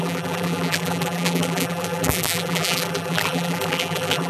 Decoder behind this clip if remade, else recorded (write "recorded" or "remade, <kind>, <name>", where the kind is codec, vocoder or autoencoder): remade, vocoder, BigVGAN v2